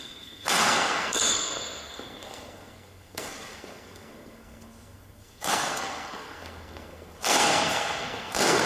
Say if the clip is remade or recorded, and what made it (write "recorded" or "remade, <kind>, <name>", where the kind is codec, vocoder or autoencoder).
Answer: remade, codec, SNAC